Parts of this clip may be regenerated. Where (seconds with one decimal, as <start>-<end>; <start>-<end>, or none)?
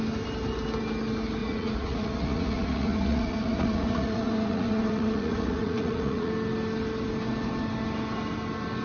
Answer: 1.4-6.3